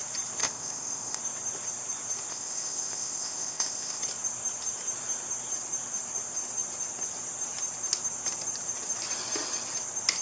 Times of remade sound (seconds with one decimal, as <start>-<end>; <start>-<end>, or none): 0.4-1.2; 2.3-4.0